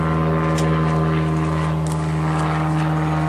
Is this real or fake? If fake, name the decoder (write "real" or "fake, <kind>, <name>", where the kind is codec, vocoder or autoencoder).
real